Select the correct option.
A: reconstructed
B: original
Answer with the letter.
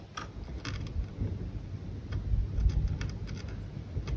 B